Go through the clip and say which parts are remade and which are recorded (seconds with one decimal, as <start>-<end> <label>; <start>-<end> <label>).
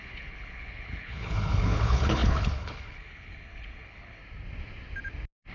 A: 0.0-4.2 remade; 4.2-5.5 recorded